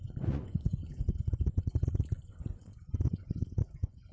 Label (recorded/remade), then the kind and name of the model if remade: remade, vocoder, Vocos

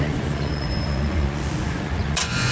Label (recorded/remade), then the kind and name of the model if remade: remade, vocoder, Vocos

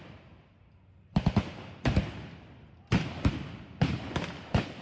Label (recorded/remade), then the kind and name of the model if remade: recorded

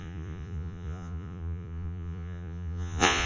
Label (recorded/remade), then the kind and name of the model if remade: remade, vocoder, Vocos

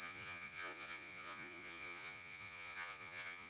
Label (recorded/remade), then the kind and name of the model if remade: remade, vocoder, Vocos